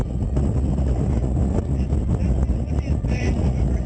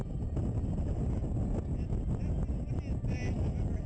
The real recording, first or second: second